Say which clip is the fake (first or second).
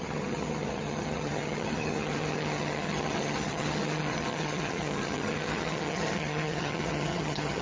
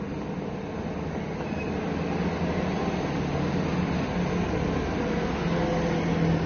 first